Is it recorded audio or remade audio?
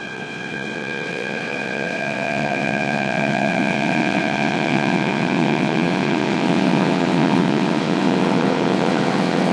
remade